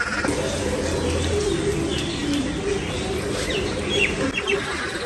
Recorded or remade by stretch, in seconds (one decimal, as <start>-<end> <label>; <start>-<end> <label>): 0.0-5.1 recorded